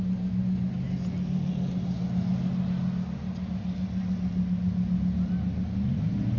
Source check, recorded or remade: recorded